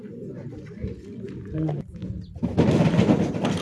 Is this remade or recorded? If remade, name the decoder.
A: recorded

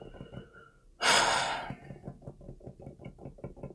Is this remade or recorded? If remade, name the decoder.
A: recorded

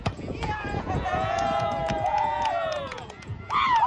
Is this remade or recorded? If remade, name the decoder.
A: remade, vocoder, Vocos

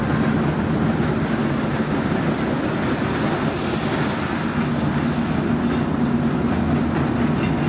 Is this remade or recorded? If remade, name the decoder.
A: recorded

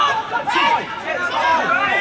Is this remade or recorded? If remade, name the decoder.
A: remade, vocoder, BigVGAN v2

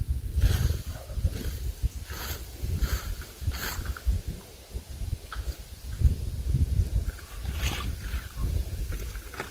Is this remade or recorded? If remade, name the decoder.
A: recorded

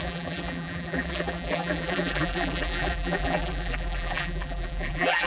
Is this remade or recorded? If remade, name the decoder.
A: remade, vocoder, BigVGAN v2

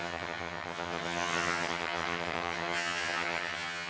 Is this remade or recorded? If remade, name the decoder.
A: remade, vocoder, HiFi-GAN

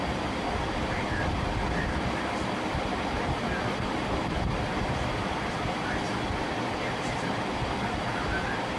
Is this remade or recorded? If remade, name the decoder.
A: recorded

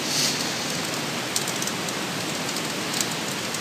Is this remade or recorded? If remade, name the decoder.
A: recorded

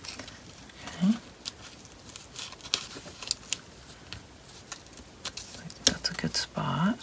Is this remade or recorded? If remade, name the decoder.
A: recorded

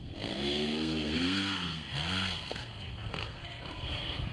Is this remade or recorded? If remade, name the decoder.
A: remade, codec, SNAC